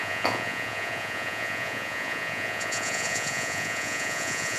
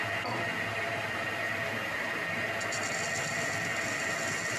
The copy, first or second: first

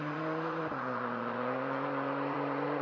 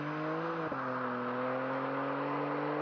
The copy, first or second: first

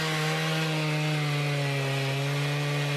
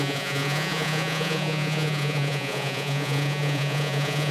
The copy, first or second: second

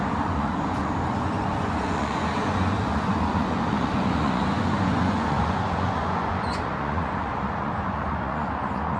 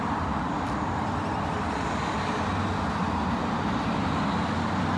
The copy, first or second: first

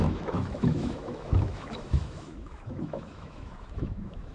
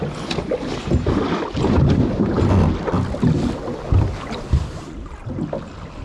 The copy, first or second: first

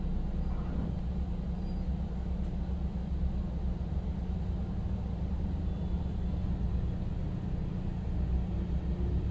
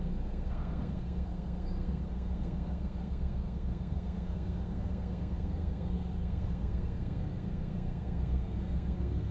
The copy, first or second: second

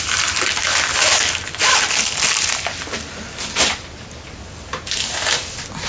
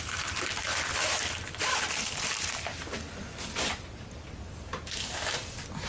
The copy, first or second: second